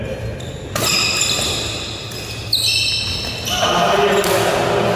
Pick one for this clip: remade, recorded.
recorded